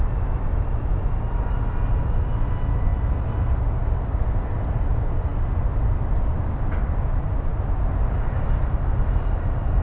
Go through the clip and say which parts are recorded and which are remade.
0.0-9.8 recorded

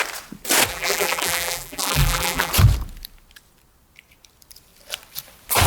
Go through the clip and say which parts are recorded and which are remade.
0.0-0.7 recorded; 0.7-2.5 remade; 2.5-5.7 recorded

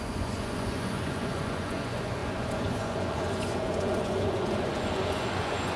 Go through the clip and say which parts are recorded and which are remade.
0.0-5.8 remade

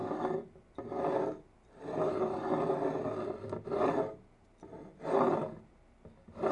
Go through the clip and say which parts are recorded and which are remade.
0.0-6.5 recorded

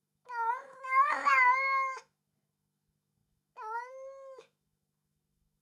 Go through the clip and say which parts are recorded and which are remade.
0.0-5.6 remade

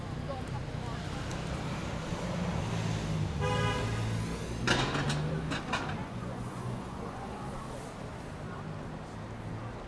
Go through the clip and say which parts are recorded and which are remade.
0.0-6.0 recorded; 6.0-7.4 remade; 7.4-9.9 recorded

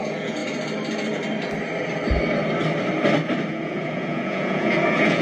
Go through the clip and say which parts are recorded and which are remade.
0.0-0.4 remade; 0.4-3.5 recorded; 3.5-5.2 remade

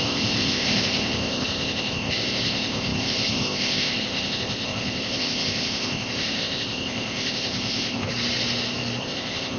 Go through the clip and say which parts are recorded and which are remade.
0.0-8.1 remade; 8.1-9.0 recorded; 9.0-9.6 remade